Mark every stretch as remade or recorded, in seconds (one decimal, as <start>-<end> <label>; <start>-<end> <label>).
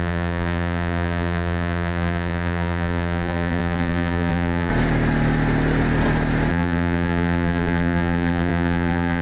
0.0-4.7 remade; 4.7-6.5 recorded; 6.5-9.2 remade